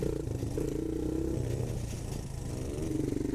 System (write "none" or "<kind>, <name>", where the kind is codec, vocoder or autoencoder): none